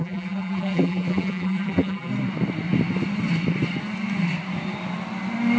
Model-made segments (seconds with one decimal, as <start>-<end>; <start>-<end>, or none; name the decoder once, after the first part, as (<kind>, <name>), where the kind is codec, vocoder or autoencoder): 0.0-2.1 (vocoder, BigVGAN v2)